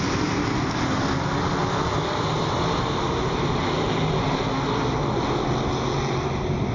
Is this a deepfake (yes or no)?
no